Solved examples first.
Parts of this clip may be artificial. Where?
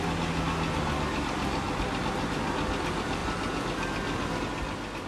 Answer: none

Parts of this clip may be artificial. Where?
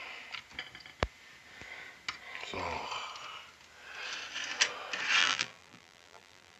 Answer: 5.2-6.6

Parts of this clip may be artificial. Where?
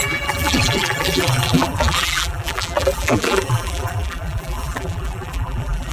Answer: 0.0-5.9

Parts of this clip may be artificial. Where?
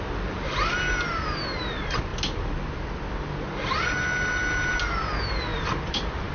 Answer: 5.5-6.3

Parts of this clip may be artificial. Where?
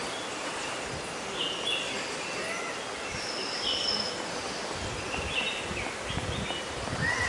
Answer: 3.4-4.9